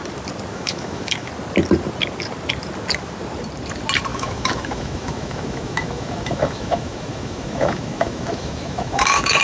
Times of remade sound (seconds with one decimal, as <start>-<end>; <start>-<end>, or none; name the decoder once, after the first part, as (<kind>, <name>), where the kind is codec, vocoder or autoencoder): 0.5-1.3 (autoencoder, DAC-VAE); 4.1-9.4